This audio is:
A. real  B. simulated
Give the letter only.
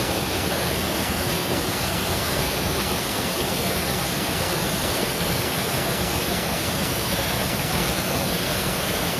B